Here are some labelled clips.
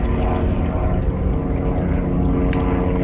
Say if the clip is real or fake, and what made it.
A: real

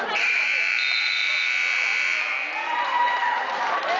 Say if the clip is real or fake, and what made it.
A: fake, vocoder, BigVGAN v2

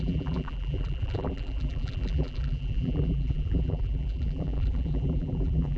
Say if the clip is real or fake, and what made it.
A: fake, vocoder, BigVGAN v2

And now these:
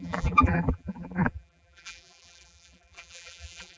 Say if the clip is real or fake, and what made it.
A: fake, vocoder, BigVGAN v2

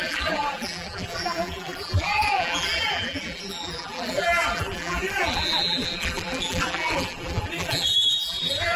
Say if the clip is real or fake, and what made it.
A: fake, vocoder, BigVGAN v2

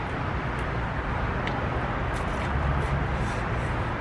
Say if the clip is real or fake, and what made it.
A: fake, vocoder, BigVGAN v2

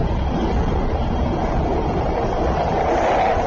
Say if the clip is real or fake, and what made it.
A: real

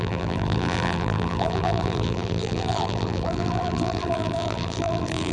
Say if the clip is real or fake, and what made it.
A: fake, vocoder, BigVGAN v2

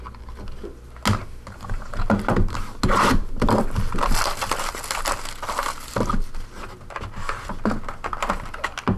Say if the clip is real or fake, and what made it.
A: real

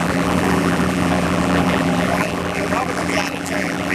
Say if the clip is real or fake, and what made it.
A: fake, vocoder, BigVGAN v2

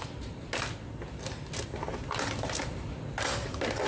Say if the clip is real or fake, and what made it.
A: real